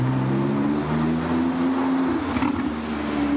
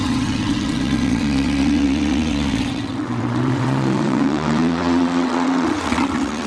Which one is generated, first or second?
second